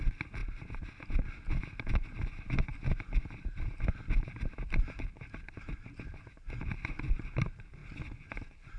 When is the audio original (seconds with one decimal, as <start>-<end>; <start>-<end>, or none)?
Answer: 0.4-1.6; 7.8-8.3